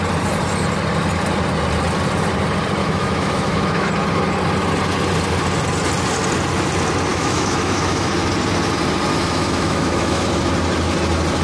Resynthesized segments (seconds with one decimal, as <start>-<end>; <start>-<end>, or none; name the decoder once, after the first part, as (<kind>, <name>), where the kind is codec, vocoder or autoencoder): 2.8-3.9 (autoencoder, DAC-VAE); 7.1-8.1; 9.1-10.5